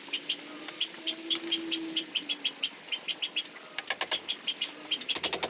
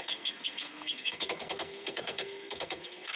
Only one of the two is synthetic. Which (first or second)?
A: second